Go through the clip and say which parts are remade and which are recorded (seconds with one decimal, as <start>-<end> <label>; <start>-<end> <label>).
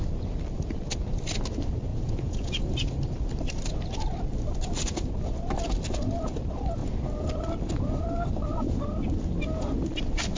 0.0-1.9 recorded; 1.9-2.6 remade; 2.6-10.4 recorded